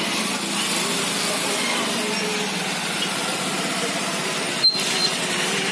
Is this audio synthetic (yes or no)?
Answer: no